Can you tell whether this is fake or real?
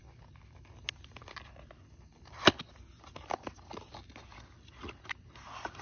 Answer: real